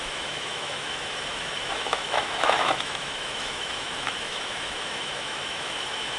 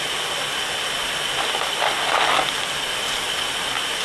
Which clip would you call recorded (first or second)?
second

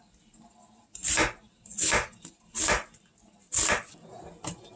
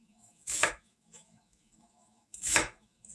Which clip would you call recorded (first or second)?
first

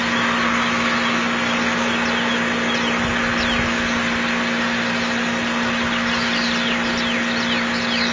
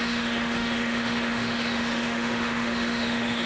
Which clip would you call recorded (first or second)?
first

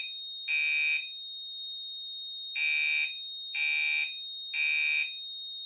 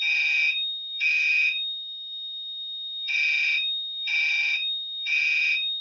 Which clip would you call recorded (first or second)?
first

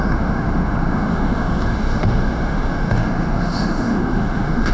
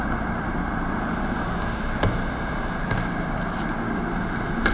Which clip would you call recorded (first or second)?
second